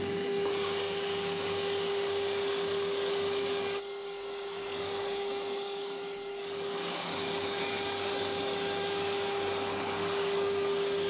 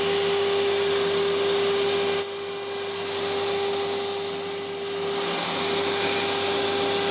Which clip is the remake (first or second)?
first